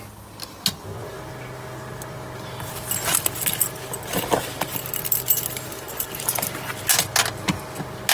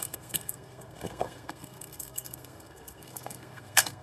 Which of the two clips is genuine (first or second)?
first